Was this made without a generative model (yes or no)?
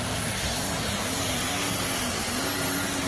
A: yes